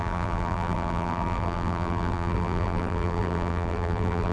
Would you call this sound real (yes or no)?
no